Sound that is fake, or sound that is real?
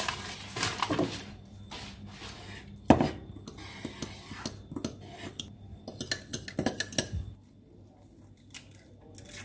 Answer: real